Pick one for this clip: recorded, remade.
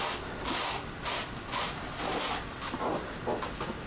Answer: recorded